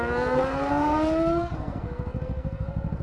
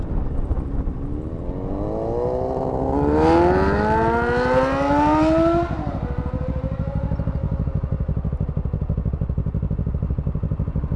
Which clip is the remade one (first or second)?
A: first